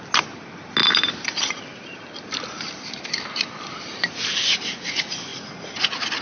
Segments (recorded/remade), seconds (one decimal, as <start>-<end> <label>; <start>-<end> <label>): 0.0-0.8 recorded; 0.8-4.1 remade; 4.1-6.2 recorded